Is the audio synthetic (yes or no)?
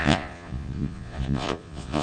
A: yes